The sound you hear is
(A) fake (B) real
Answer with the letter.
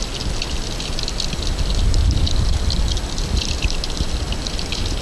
B